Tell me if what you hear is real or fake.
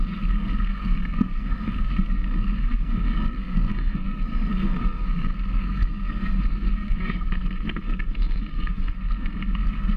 fake